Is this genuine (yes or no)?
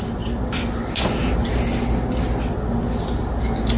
yes